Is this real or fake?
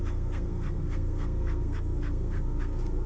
fake